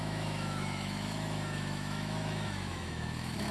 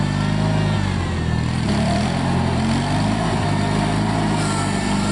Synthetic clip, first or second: first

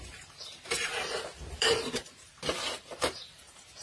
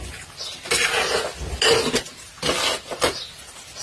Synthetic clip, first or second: first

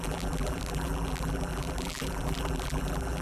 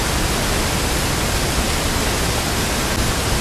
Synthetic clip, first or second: first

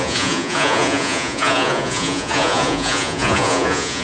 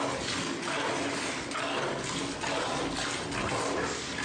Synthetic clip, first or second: first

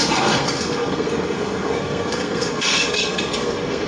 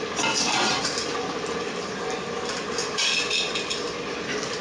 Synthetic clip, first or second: first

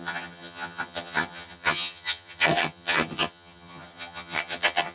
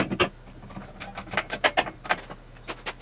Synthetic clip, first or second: first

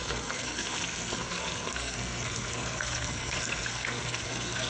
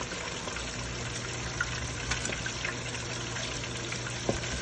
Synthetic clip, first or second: first